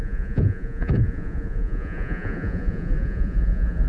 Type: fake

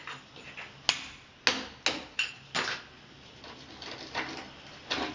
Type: real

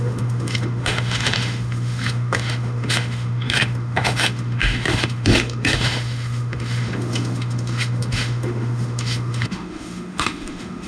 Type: fake